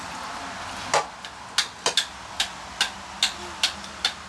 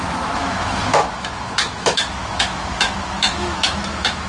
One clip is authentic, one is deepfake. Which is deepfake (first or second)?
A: second